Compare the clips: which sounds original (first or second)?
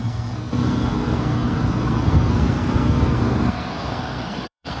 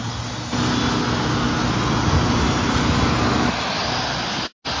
second